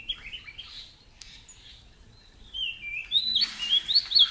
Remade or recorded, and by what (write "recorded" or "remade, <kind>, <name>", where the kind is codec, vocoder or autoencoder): recorded